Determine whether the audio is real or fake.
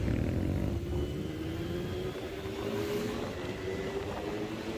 real